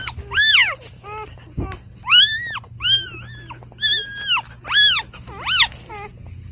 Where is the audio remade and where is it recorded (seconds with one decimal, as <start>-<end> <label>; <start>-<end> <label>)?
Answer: 0.0-6.5 recorded